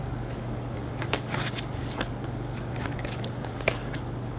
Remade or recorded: remade